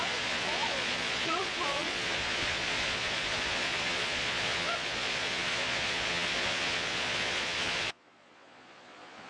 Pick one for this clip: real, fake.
fake